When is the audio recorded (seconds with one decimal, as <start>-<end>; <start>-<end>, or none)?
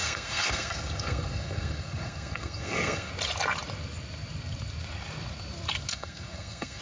3.1-5.9